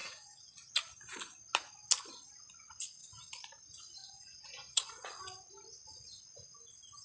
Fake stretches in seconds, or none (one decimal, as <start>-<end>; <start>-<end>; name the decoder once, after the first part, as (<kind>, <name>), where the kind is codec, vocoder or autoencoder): 0.0-0.7 (vocoder, Vocos); 4.0-5.2